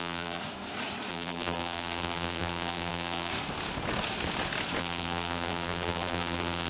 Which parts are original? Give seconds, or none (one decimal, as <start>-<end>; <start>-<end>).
0.4-1.1; 3.3-4.8